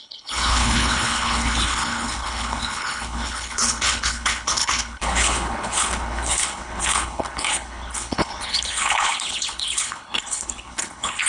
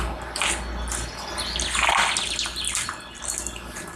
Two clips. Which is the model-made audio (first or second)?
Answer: first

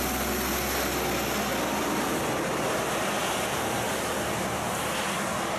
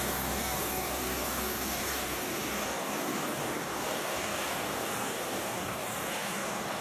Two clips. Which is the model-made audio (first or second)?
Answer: second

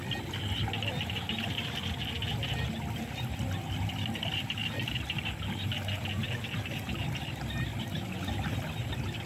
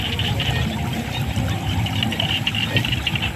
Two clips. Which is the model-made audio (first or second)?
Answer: second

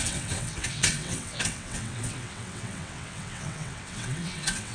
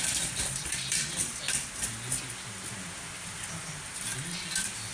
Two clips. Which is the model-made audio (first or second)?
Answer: first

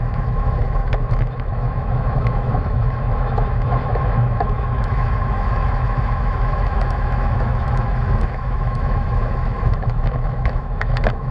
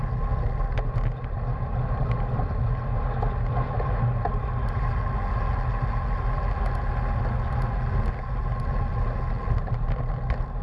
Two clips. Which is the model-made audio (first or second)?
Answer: first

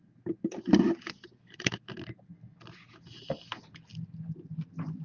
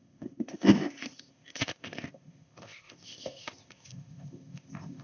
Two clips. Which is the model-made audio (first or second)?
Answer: second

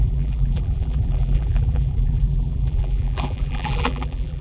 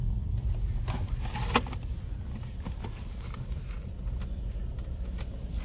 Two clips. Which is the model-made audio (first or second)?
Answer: first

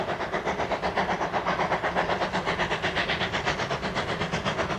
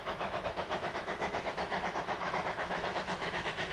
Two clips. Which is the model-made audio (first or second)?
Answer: second